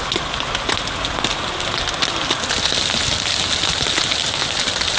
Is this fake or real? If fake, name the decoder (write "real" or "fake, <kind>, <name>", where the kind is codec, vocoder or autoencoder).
real